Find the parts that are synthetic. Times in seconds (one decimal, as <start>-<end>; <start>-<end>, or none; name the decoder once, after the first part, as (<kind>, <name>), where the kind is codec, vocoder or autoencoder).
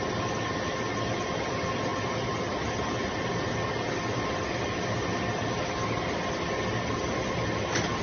none